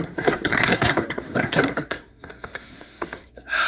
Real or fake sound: fake